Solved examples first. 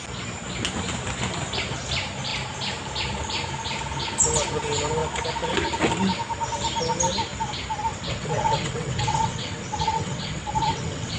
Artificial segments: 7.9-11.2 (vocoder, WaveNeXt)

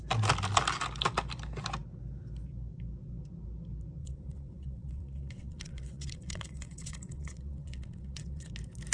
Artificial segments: 4.0-8.5 (vocoder, WaveNeXt)

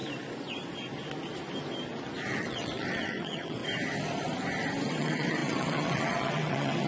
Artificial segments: 2.3-3.6 (vocoder, WaveNeXt); 4.9-6.9

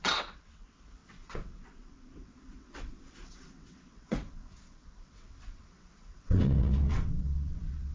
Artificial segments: 0.0-7.9 (vocoder, WaveNeXt)

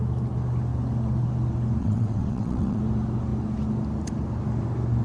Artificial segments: 1.8-2.8 (vocoder, WaveNeXt)